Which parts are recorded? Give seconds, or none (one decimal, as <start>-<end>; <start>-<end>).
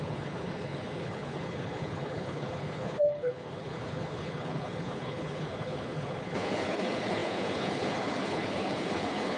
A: none